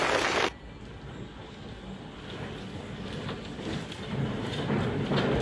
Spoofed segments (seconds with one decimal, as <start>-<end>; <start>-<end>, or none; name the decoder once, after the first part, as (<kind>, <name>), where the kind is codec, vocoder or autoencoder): none